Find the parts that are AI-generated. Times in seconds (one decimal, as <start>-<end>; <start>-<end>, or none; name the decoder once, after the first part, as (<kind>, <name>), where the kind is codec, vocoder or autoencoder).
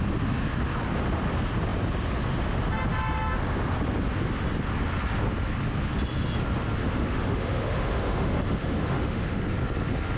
6.8-9.4 (autoencoder, DAC-VAE)